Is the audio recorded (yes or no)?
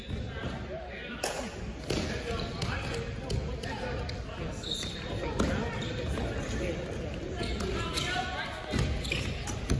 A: yes